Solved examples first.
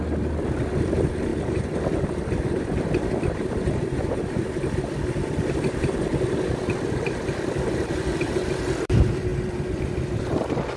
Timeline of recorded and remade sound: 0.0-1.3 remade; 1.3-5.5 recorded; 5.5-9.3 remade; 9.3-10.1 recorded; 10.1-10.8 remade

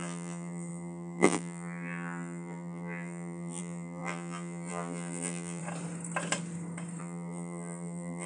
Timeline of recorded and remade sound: 0.0-5.6 remade; 5.6-7.0 recorded; 7.0-8.3 remade

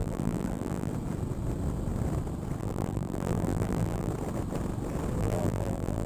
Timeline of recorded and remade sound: 0.0-0.9 remade; 0.9-2.6 recorded; 2.6-4.1 remade; 4.1-5.2 recorded; 5.2-6.1 remade

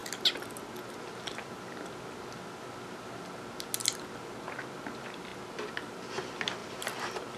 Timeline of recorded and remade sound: 0.0-6.6 recorded; 6.6-7.4 remade